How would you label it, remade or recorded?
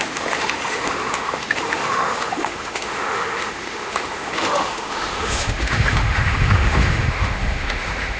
remade